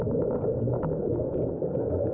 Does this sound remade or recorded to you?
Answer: remade